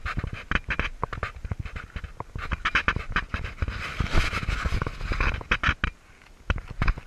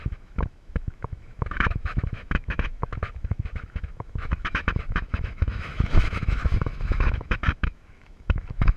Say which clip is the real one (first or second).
first